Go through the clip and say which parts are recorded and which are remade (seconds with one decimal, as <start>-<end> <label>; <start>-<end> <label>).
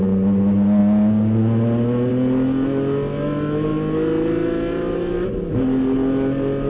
0.0-6.7 recorded